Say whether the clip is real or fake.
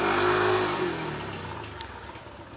real